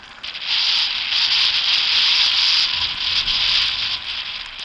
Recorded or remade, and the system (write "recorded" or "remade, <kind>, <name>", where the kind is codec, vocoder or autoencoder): recorded